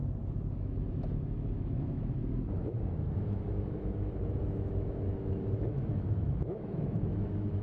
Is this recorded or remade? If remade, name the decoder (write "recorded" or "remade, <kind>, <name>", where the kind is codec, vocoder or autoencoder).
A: remade, autoencoder, DAC-VAE